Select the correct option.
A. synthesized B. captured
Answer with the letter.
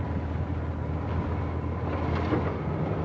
B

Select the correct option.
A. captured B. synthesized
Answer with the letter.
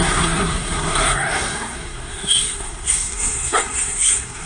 B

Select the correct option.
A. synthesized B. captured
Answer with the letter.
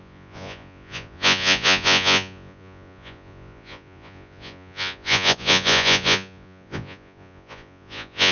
A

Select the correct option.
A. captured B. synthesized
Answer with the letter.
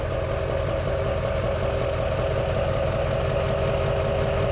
A